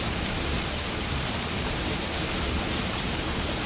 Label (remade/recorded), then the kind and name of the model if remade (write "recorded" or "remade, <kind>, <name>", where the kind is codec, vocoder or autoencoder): remade, vocoder, BigVGAN v2